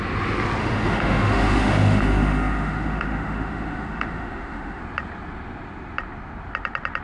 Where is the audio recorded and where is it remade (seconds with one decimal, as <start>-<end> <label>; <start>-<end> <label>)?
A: 0.0-0.6 recorded; 0.6-4.8 remade; 4.8-7.0 recorded